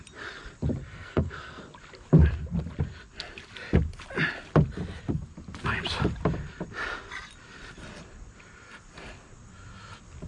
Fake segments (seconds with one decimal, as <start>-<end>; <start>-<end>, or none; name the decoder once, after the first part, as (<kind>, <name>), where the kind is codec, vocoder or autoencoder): 0.8-1.6 (codec, SNAC)